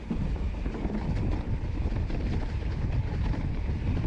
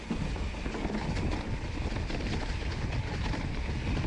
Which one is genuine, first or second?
second